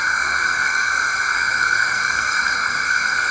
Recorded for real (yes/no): no